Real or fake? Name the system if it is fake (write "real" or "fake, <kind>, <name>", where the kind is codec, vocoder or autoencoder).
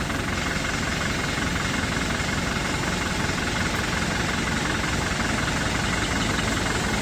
real